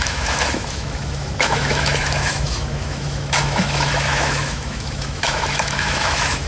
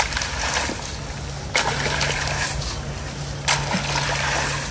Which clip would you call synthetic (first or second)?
first